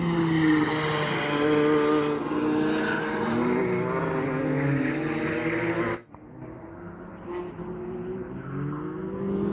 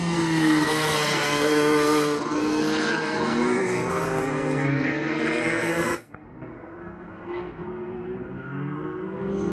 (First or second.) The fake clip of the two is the second